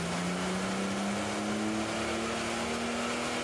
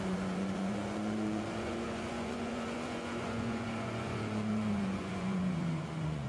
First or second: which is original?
first